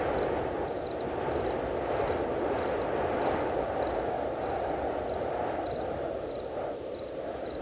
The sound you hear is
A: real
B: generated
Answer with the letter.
A